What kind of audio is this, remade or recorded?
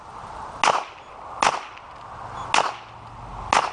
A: recorded